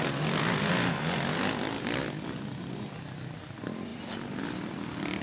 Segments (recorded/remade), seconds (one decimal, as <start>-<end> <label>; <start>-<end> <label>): 0.0-3.9 recorded; 3.9-5.2 remade